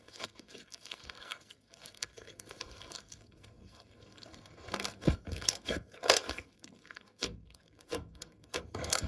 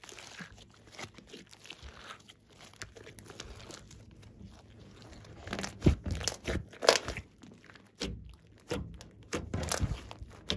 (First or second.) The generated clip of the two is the first